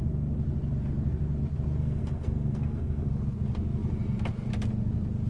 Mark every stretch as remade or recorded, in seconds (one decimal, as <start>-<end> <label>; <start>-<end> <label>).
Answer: 0.0-1.8 recorded; 1.8-3.1 remade; 3.1-5.3 recorded